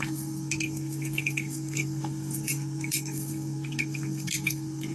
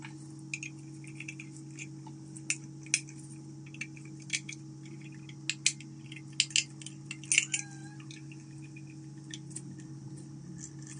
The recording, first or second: second